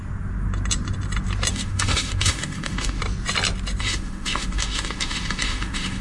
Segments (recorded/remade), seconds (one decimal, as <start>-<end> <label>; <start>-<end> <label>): 0.0-1.5 recorded; 1.5-3.0 remade; 3.0-3.8 recorded; 3.8-6.0 remade